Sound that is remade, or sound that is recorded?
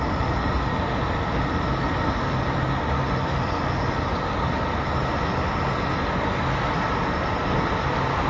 recorded